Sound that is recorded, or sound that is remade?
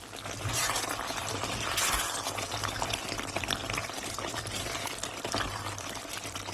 remade